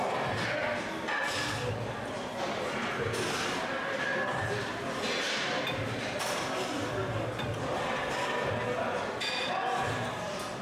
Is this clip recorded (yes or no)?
yes